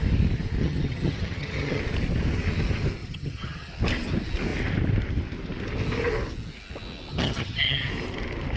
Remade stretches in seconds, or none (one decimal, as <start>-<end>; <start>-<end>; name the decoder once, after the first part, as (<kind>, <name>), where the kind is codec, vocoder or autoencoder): 0.6-1.8 (vocoder, HiFi-GAN); 3.0-3.7; 7.1-7.9